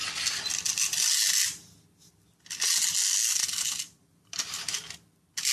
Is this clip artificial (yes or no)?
no